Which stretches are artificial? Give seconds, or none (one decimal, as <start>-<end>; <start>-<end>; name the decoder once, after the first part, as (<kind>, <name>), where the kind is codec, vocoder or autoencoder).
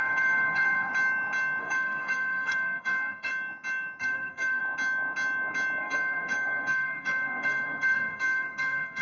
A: 0.0-0.9 (codec, SNAC); 1.6-3.3; 4.0-4.6; 5.8-9.0